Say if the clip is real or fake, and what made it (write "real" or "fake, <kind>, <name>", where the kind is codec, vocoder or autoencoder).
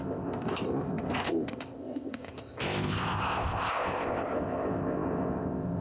fake, codec, ZipCodec